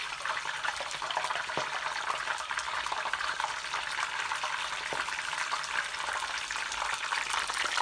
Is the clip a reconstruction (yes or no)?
yes